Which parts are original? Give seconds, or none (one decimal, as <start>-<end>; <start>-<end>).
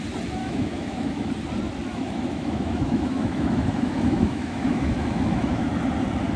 0.0-0.4; 1.3-1.9; 5.7-6.4